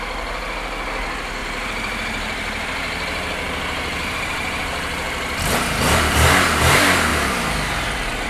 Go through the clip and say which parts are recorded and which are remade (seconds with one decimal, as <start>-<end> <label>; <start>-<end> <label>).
0.0-1.4 recorded; 1.4-6.1 remade; 6.1-7.1 recorded; 7.1-7.9 remade; 7.9-8.3 recorded